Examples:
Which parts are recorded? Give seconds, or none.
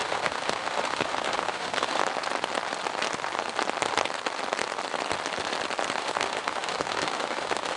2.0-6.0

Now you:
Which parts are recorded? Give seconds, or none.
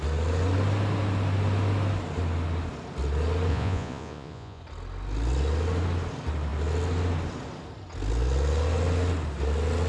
0.0-3.5; 4.6-9.9